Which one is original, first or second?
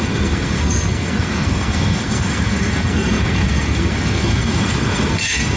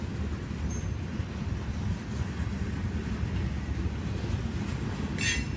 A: second